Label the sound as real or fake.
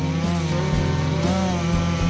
real